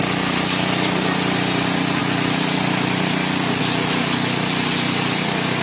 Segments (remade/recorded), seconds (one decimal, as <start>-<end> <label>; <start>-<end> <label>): 0.0-5.6 recorded